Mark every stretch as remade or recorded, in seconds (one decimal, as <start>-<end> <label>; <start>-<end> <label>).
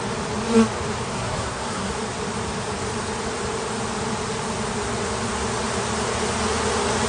0.0-1.1 recorded; 1.1-1.9 remade; 1.9-7.1 recorded